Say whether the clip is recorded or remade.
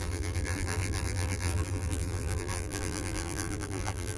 remade